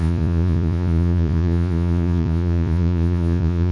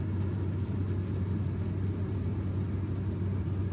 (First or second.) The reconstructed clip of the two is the first